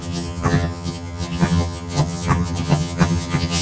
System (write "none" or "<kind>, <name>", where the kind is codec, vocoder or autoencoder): vocoder, HiFi-GAN